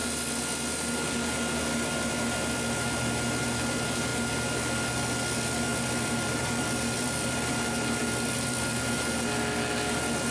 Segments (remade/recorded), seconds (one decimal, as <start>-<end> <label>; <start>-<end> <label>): 0.0-5.7 recorded; 5.7-7.5 remade; 7.5-8.0 recorded; 8.0-8.7 remade; 8.7-10.3 recorded